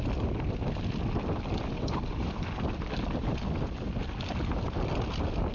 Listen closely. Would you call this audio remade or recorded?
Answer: recorded